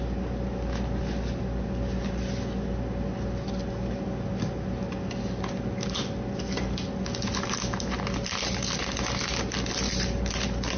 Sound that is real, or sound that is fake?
real